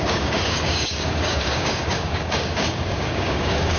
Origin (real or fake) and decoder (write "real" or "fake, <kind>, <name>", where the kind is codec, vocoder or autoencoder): fake, codec, DAC